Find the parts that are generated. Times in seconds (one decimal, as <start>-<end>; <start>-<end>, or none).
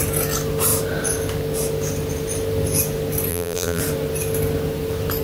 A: 3.3-3.8